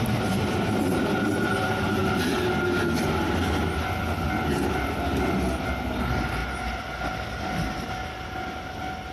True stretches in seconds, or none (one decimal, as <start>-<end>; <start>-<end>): 0.0-9.1